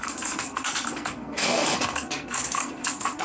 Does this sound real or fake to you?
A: fake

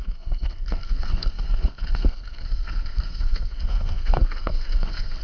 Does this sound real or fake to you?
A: fake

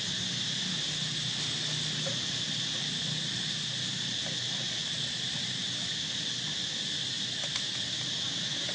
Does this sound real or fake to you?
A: real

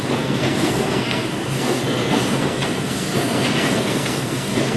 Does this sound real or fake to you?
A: fake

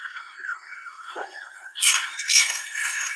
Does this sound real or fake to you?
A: fake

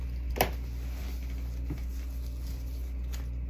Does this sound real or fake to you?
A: real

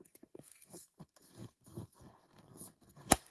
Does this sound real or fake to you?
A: fake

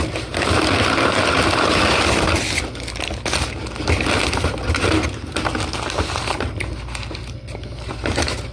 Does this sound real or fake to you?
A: real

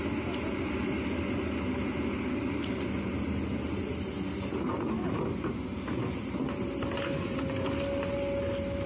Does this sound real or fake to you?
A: real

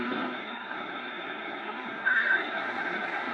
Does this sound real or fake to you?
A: fake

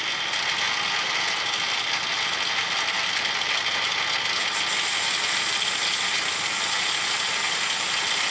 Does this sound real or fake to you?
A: real